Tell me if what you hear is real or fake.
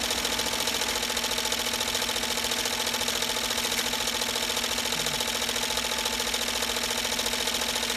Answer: real